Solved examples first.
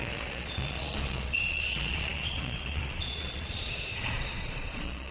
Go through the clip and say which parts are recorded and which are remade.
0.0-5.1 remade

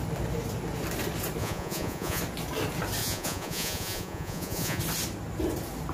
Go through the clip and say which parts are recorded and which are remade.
0.0-1.4 recorded; 1.4-2.2 remade; 2.2-3.0 recorded; 3.0-4.8 remade; 4.8-5.9 recorded